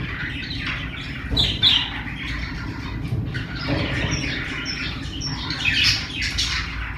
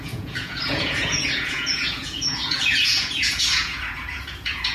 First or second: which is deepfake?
second